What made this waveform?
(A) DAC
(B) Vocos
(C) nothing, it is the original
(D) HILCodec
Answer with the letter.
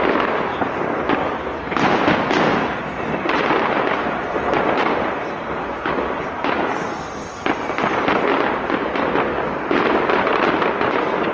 C